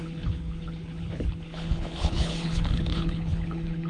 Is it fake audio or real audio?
fake